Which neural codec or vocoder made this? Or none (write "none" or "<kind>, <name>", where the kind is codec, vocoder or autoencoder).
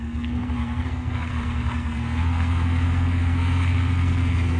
codec, SNAC